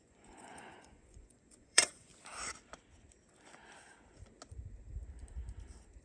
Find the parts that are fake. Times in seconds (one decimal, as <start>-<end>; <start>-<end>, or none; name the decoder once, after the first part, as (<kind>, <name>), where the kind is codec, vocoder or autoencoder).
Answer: 0.0-2.1 (vocoder, Vocos)